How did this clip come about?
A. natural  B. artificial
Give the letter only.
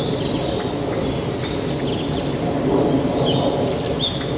A